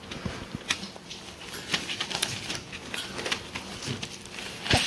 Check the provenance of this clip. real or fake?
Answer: real